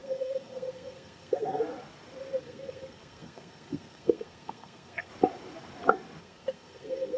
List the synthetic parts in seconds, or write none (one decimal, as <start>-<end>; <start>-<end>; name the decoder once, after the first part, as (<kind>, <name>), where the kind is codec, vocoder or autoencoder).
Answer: 0.0-1.6 (codec, SNAC); 2.4-5.1; 6.2-7.2